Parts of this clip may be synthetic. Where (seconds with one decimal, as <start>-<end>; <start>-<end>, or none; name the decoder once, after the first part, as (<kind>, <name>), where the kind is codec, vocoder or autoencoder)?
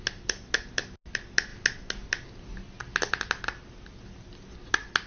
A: none